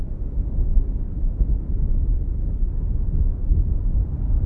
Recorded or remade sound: recorded